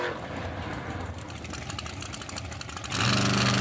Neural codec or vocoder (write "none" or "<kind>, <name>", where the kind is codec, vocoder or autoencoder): none